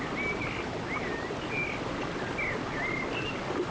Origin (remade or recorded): recorded